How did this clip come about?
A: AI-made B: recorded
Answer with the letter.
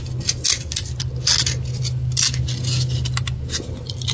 B